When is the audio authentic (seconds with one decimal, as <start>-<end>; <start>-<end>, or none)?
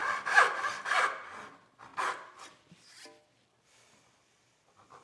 0.0-5.0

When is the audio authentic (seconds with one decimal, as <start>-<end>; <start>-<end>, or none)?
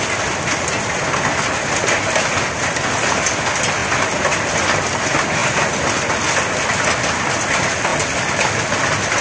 0.0-9.2